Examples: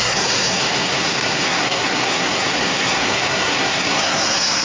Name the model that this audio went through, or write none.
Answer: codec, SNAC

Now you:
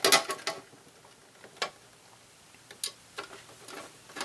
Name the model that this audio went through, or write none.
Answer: none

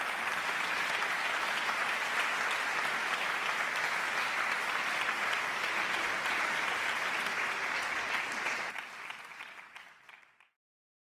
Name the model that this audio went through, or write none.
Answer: none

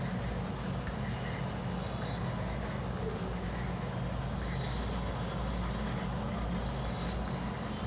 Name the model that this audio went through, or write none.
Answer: none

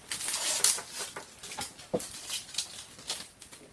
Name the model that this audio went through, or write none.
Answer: none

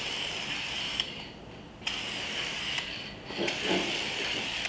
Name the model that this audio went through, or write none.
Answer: none